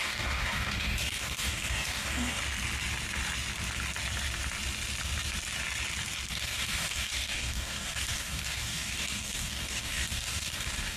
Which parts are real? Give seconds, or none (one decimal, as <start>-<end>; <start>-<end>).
2.4-6.3